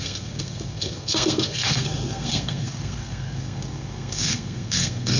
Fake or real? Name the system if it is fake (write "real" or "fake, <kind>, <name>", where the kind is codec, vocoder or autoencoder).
fake, codec, SNAC